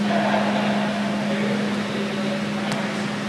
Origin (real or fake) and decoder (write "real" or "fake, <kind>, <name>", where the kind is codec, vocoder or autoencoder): real